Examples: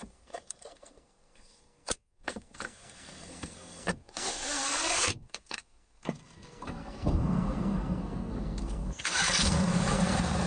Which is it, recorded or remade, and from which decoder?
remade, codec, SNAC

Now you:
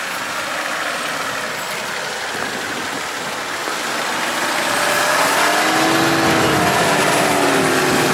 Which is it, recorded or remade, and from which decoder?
recorded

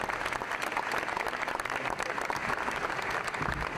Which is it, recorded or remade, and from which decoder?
recorded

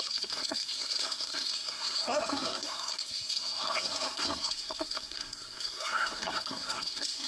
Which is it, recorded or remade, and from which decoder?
remade, codec, SNAC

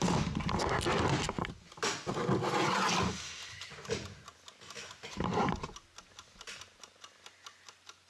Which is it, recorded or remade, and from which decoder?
recorded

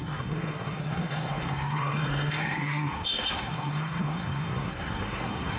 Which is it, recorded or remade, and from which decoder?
remade, codec, SNAC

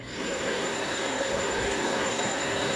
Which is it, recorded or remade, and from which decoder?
remade, codec, SNAC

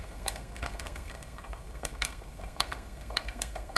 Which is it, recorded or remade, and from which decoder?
remade, codec, SNAC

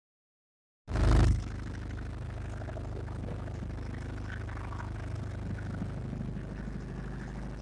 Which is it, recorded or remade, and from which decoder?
recorded